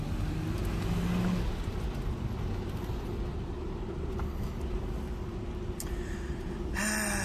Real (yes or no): yes